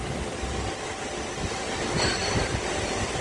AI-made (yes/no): no